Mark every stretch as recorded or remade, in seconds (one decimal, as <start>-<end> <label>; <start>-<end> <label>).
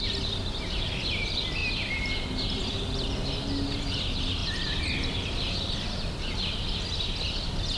0.0-7.8 recorded